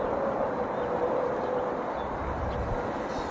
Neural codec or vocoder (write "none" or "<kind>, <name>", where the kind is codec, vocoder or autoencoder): none